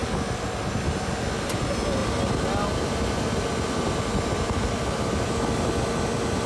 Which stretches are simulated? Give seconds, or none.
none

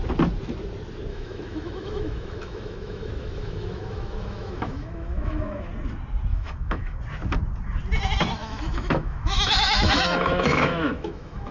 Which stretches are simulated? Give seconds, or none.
1.1-5.7 (autoencoder, DAC-VAE); 6.3-7.0; 8.4-11.5

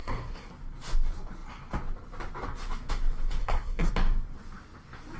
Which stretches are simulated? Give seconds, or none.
0.0-0.5 (codec, SNAC); 3.4-3.9